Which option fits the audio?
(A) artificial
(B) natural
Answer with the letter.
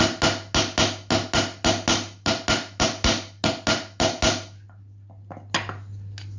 B